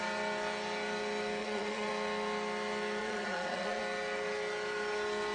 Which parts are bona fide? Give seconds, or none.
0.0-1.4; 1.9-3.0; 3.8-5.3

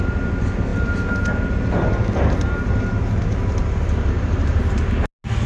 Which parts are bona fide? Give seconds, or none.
0.0-3.6; 4.7-5.5